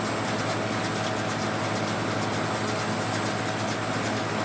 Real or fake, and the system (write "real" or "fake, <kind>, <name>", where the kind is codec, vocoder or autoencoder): real